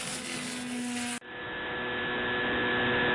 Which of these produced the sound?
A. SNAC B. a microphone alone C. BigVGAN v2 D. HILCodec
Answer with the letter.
B